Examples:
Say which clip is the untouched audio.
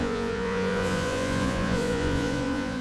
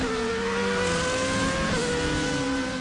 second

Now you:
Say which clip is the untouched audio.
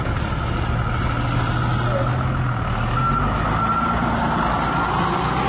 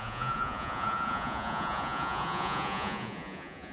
first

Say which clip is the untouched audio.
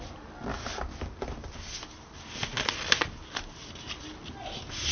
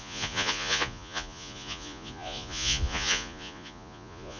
first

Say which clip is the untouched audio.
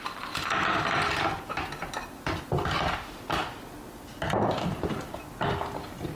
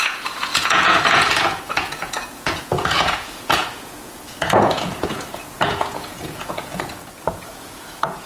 first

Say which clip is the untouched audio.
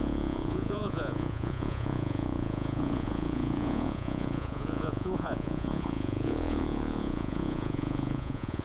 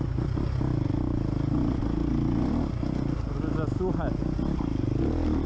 second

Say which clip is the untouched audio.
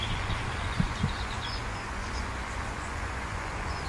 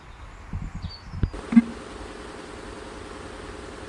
second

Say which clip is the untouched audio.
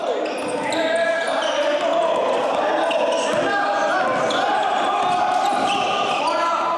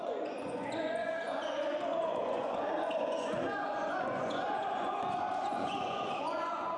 first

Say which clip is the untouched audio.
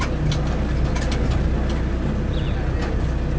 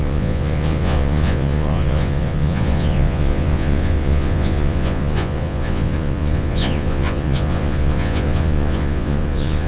first